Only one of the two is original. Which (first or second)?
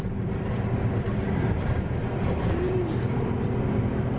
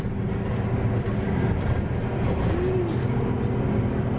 second